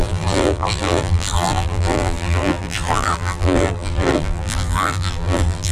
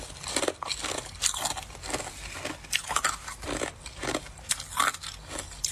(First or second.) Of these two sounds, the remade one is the first